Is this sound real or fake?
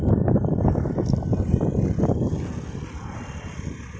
real